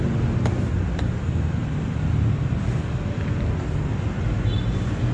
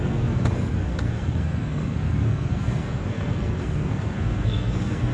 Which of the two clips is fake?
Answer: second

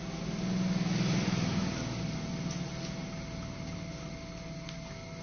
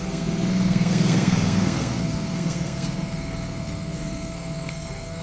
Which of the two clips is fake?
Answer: second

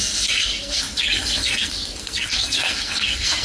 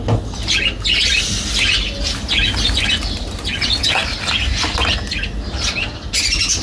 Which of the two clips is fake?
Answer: first